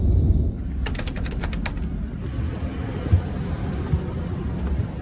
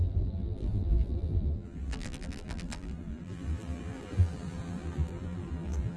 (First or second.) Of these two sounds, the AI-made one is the second